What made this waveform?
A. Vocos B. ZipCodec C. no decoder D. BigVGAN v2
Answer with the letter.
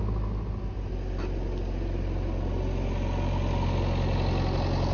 C